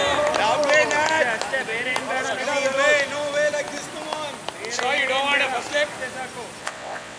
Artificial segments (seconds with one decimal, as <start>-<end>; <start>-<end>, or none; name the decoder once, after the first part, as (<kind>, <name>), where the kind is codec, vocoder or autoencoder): 6.6-7.2 (vocoder, WaveNeXt)